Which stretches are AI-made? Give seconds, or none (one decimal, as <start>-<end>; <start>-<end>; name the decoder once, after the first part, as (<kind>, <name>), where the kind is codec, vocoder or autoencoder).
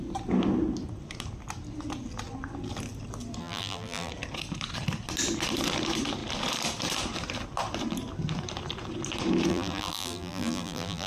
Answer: 3.4-4.1 (vocoder, BigVGAN v2); 9.5-11.1